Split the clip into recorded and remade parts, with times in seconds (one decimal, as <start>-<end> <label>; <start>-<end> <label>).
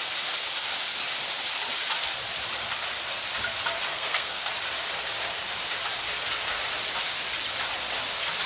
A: 0.0-3.9 recorded; 3.9-4.5 remade; 4.5-8.5 recorded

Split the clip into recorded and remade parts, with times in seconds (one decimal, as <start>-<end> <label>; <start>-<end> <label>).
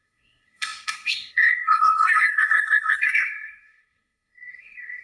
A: 0.0-5.0 remade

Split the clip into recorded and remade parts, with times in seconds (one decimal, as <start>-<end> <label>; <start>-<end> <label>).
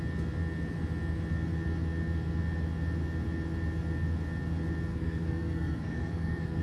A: 0.0-4.9 recorded; 4.9-6.6 remade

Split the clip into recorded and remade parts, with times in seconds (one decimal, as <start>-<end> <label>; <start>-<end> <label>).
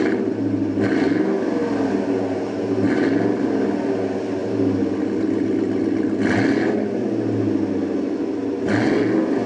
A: 0.0-9.5 recorded